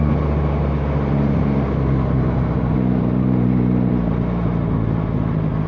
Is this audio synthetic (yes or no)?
no